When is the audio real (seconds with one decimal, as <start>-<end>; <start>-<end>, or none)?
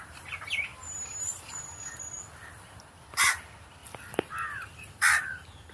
0.0-3.8